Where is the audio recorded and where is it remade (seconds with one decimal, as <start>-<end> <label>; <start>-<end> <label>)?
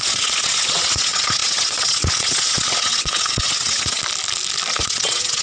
0.0-4.0 remade; 4.0-4.7 recorded; 4.7-5.4 remade